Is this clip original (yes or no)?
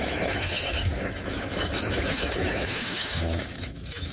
no